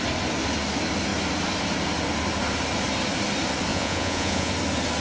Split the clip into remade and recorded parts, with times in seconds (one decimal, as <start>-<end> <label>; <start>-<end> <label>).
0.0-3.7 recorded; 3.7-4.5 remade; 4.5-5.0 recorded